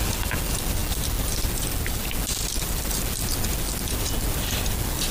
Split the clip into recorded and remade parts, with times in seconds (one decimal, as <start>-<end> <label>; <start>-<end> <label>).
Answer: 0.0-5.1 recorded